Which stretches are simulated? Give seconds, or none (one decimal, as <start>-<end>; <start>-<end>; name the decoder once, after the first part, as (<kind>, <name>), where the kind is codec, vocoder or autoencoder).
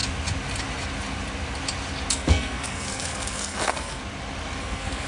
2.1-4.0 (codec, SNAC); 4.6-5.1